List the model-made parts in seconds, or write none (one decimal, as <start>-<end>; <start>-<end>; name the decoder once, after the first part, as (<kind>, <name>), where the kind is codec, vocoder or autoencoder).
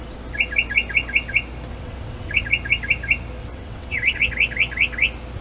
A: 1.7-2.4 (vocoder, WaveNeXt); 3.4-4.2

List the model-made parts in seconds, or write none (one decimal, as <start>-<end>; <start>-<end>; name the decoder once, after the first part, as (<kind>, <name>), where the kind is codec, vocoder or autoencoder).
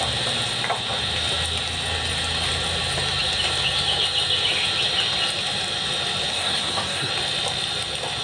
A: 6.3-7.1 (codec, SNAC)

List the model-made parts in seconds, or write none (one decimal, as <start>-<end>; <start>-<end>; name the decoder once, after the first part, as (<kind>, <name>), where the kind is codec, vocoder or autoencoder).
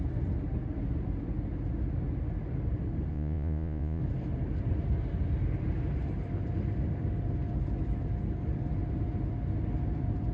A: 3.1-4.0 (vocoder, Vocos)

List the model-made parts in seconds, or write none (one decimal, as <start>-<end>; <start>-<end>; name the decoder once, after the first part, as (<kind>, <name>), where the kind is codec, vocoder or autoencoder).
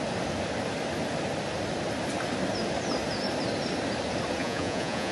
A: 4.4-5.1 (vocoder, Vocos)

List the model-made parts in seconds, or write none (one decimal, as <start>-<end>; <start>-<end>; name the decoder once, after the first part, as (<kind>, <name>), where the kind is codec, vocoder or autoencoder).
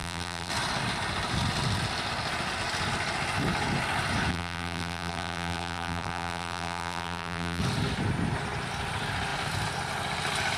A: 0.0-0.5 (vocoder, BigVGAN v2); 4.3-7.6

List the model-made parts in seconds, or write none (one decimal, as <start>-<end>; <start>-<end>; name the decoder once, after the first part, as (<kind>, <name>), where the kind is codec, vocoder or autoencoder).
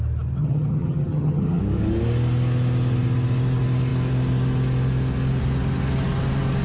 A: 0.4-1.6 (vocoder, HiFi-GAN)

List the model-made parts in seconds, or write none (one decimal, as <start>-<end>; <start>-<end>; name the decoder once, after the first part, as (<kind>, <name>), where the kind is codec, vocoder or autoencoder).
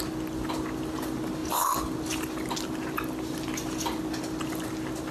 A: none